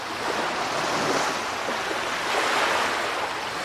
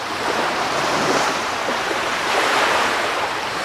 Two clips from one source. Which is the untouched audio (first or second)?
first